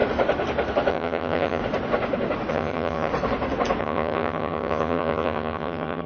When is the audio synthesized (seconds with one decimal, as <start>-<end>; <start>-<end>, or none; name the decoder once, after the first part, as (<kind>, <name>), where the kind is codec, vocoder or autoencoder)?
0.9-1.6 (vocoder, HiFi-GAN); 2.5-3.1; 3.8-6.1